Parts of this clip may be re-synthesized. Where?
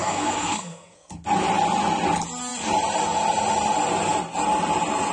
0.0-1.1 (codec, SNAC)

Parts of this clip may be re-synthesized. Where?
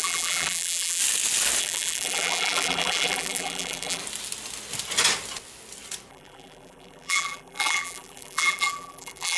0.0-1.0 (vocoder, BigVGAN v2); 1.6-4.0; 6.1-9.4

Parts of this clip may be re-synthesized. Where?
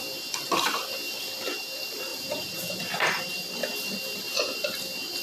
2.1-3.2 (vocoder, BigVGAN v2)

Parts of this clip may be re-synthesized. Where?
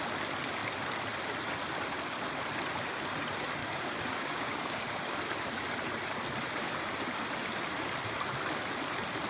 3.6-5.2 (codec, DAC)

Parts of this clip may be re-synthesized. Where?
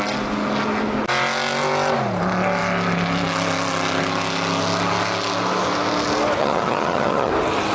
6.4-7.3 (vocoder, HiFi-GAN)